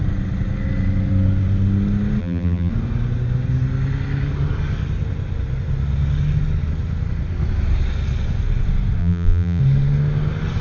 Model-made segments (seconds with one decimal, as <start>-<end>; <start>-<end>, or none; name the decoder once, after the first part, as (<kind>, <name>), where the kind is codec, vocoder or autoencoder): 2.2-2.7 (vocoder, BigVGAN v2); 9.0-9.6